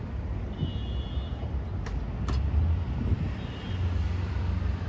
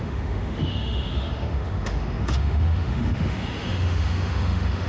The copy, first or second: second